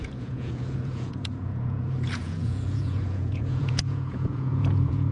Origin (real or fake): fake